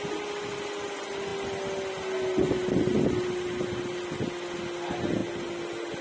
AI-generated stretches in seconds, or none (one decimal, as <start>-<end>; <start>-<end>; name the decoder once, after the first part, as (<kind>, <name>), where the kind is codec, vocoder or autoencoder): none